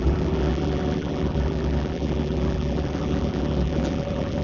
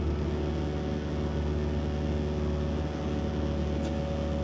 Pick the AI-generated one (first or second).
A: first